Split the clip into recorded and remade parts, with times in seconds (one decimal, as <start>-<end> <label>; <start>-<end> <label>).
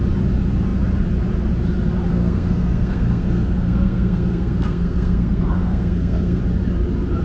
0.0-2.1 recorded; 2.1-6.4 remade; 6.4-7.2 recorded